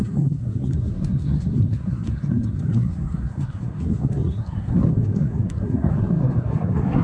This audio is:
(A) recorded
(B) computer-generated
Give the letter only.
B